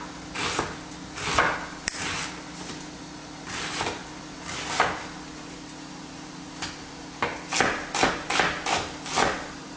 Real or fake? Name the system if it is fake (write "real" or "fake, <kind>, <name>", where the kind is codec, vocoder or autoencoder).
real